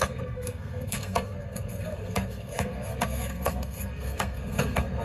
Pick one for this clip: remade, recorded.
remade